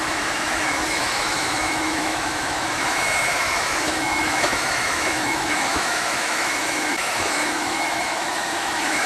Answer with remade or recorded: remade